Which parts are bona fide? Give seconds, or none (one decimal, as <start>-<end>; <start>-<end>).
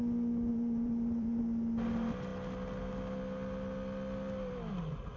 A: 0.0-0.5; 1.4-5.2